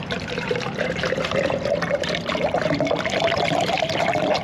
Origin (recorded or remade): recorded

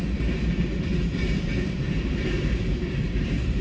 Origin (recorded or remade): remade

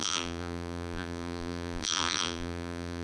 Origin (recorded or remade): remade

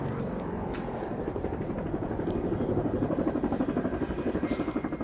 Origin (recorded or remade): remade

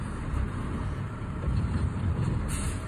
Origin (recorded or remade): remade